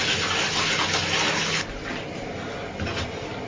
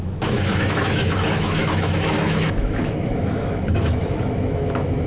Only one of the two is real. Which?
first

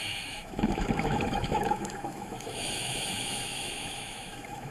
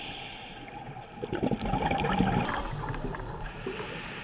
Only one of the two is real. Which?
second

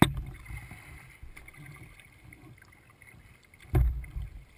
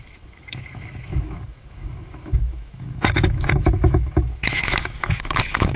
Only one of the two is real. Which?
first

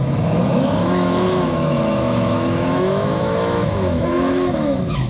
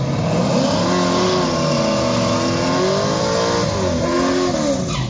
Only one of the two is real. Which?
second